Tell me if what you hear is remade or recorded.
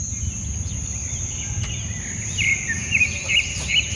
recorded